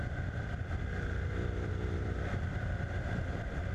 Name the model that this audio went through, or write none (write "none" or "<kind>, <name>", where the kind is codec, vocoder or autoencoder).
vocoder, BigVGAN v2